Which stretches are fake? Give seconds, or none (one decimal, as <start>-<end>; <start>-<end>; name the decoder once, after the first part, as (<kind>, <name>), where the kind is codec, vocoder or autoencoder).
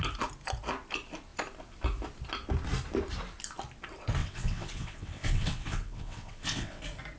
4.2-6.8 (vocoder, WaveNeXt)